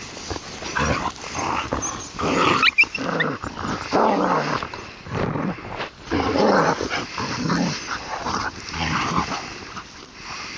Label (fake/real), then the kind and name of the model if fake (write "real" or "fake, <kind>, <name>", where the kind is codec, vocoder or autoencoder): real